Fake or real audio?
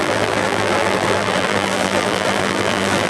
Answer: fake